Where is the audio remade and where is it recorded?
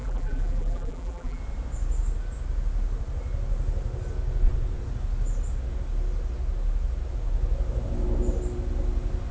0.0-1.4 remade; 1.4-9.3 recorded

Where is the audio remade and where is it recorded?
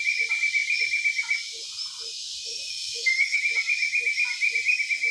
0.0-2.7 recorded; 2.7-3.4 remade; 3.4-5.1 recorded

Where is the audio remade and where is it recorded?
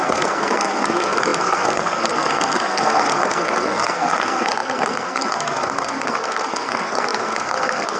0.0-8.0 remade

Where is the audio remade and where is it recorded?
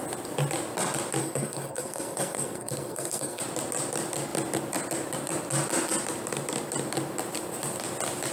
0.0-1.2 recorded; 1.2-3.4 remade; 3.4-8.3 recorded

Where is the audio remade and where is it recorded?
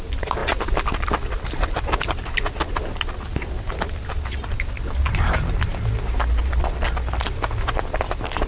0.0-8.5 recorded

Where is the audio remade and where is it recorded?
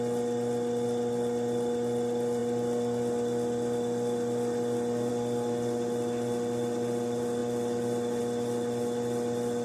0.0-9.6 recorded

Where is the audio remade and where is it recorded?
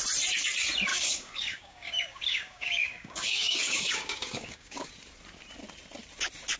0.0-0.9 recorded; 0.9-4.9 remade; 4.9-6.6 recorded